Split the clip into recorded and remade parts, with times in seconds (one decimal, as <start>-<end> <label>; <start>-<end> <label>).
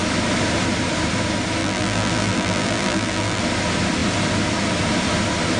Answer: 0.0-1.6 recorded; 1.6-3.4 remade; 3.4-5.6 recorded